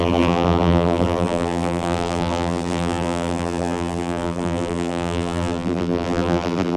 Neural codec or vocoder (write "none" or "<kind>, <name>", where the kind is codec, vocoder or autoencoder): vocoder, BigVGAN v2